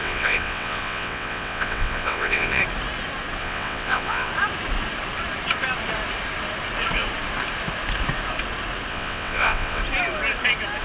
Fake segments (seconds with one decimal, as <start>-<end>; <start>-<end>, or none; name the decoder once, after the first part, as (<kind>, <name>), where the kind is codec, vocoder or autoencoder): 0.0-2.6 (vocoder, WaveNeXt); 3.4-4.3; 8.9-9.8